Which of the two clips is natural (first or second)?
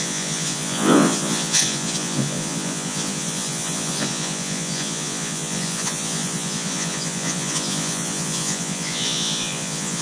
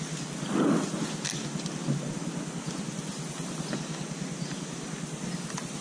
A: second